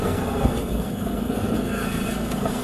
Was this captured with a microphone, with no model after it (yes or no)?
no